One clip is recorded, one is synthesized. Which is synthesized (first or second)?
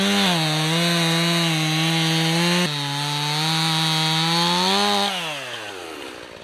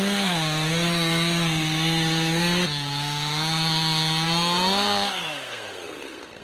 second